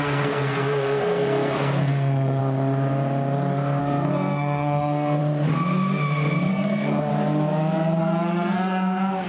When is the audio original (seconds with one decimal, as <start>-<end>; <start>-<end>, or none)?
2.4-3.8; 5.2-6.5; 7.1-8.0